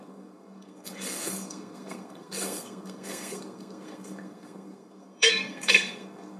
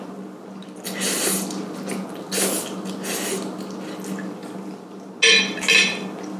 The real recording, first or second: second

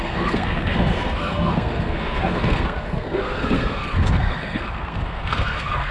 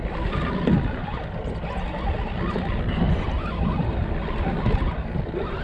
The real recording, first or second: second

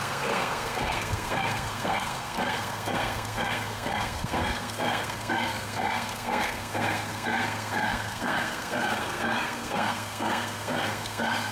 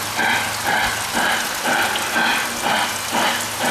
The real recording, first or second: second